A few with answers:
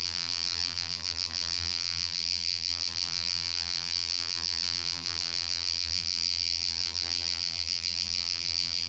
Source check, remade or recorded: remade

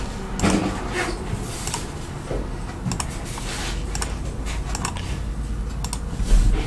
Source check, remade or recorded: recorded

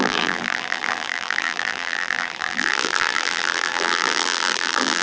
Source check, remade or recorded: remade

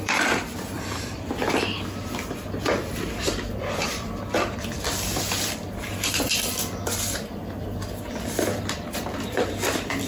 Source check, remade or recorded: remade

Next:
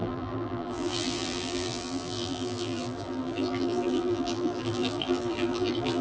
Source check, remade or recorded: remade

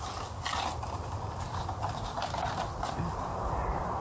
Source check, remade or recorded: recorded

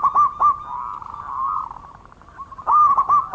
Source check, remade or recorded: recorded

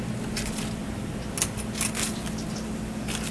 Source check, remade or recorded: recorded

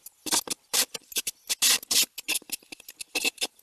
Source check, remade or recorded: recorded